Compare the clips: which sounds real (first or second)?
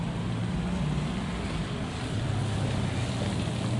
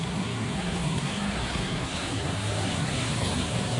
first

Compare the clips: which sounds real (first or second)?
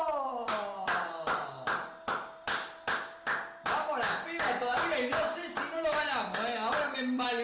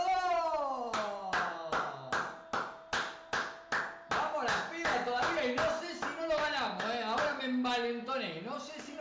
second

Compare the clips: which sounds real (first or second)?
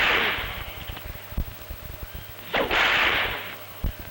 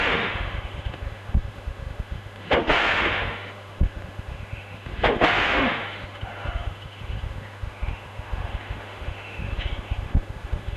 first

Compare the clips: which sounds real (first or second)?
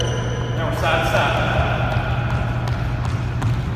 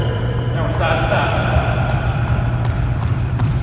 first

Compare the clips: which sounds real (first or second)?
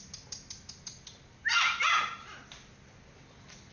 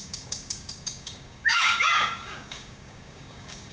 first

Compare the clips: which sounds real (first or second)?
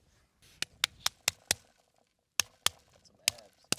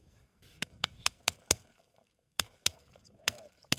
first